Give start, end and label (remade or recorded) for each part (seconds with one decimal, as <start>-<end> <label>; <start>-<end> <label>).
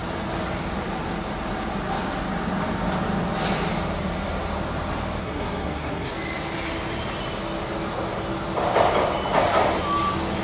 0.0-5.2 recorded; 5.2-6.1 remade; 6.1-10.4 recorded